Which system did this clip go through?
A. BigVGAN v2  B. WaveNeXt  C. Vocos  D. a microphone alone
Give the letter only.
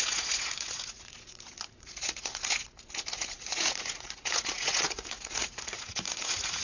C